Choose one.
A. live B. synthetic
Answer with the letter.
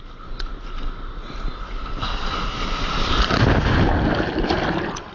A